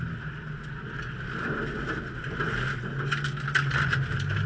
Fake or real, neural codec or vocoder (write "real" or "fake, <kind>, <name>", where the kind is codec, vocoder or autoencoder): real